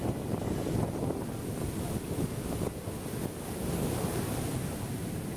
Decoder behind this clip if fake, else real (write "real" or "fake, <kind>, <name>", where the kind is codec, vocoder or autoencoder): real